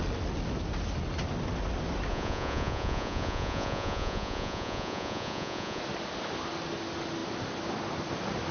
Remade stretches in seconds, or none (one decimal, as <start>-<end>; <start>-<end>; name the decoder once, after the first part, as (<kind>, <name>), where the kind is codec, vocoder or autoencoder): 2.1-5.8 (vocoder, Vocos)